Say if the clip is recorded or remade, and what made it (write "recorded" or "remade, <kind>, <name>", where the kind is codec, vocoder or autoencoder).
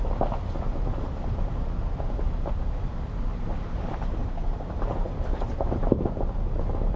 recorded